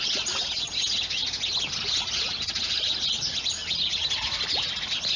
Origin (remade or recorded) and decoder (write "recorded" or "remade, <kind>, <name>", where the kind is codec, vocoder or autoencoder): recorded